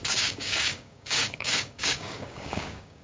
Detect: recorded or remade remade